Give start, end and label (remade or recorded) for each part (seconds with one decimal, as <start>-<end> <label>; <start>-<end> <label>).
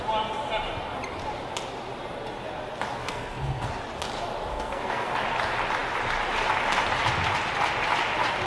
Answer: 0.0-3.0 recorded; 3.0-3.7 remade; 3.7-4.5 recorded; 4.5-5.1 remade; 5.1-8.5 recorded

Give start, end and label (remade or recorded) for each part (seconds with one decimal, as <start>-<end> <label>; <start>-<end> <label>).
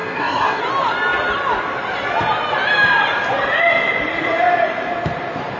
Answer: 0.0-0.6 remade; 0.6-5.6 recorded